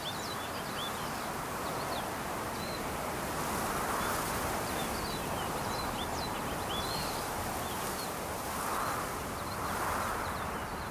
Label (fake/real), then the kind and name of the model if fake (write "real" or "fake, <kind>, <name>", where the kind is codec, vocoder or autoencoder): real